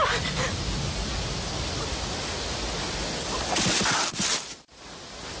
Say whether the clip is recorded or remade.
recorded